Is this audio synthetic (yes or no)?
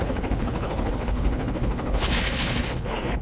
yes